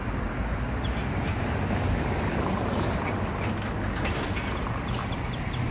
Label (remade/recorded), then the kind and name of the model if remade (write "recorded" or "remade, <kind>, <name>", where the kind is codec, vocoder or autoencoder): recorded